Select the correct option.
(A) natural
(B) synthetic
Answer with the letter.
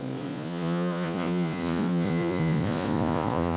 B